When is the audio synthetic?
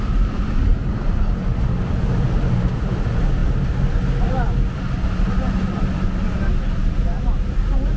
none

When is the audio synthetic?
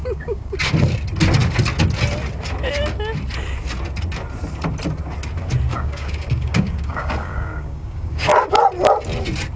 0.0-0.6; 5.7-8.3